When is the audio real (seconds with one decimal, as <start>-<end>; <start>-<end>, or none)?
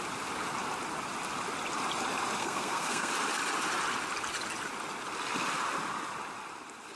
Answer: 0.0-2.4; 3.1-7.0